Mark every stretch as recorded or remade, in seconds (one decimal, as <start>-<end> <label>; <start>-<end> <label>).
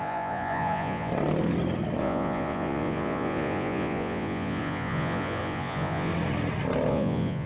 0.0-1.1 remade; 1.1-2.0 recorded; 2.0-6.1 remade; 6.1-6.9 recorded; 6.9-7.5 remade